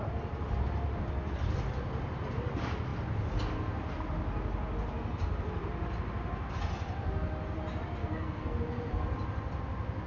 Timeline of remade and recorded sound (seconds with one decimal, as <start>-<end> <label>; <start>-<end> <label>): 0.0-8.0 recorded; 8.0-8.6 remade; 8.6-10.1 recorded